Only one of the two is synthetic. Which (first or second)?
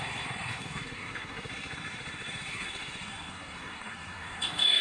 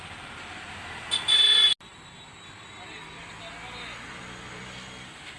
first